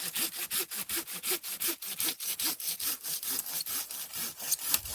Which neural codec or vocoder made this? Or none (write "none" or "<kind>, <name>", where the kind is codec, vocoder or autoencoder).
none